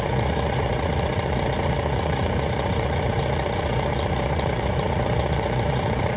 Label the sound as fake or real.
fake